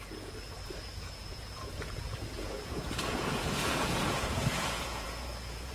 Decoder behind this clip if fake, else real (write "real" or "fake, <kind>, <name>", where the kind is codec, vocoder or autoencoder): fake, vocoder, Vocos